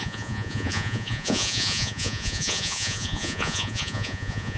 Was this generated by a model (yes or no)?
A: yes